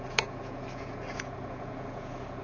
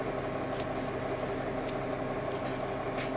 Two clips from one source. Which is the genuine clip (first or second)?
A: second